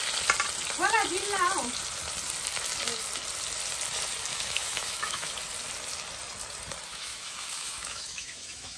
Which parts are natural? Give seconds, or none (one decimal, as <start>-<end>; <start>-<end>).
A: 0.0-4.3; 5.3-6.9